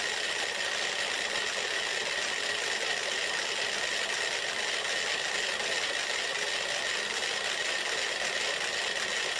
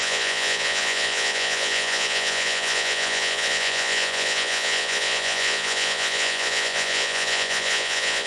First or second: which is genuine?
first